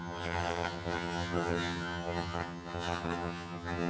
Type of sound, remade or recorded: remade